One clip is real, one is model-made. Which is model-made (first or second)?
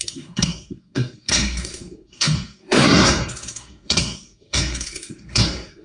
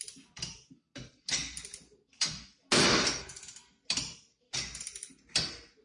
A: first